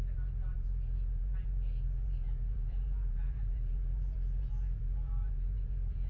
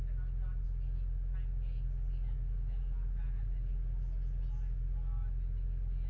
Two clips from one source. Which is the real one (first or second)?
second